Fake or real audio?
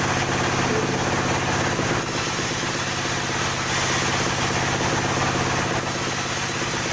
real